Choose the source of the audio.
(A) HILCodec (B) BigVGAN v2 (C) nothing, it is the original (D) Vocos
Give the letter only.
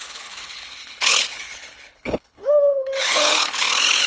A